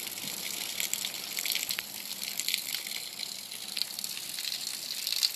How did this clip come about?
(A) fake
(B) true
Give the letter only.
B